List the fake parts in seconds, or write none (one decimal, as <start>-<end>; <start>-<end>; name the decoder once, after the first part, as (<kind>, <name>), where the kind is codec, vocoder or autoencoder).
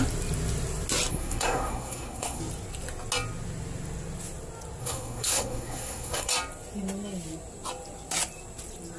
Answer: 1.1-2.4 (codec, SNAC); 4.8-6.3